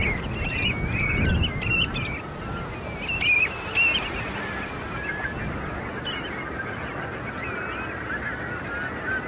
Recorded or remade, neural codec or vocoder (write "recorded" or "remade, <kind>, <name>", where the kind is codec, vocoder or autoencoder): recorded